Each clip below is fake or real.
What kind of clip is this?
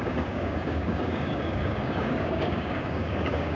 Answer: fake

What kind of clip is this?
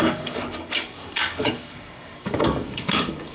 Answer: fake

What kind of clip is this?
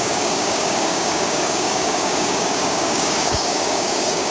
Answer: fake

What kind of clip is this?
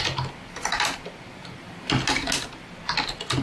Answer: real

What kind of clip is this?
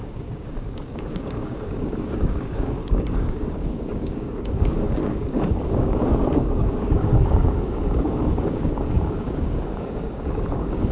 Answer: fake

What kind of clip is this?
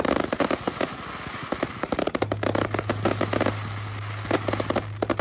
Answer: real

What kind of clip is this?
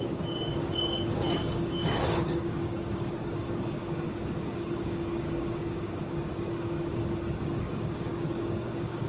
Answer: fake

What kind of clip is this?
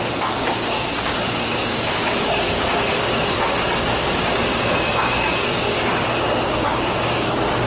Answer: fake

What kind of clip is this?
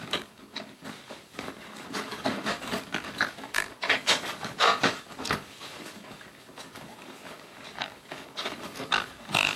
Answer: fake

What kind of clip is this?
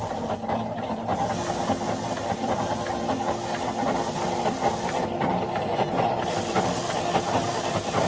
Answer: real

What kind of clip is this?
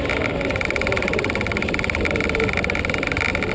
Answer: real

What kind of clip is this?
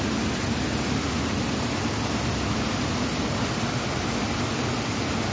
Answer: real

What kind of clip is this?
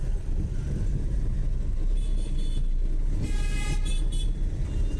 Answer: real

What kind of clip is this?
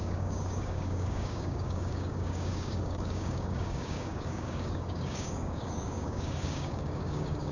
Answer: fake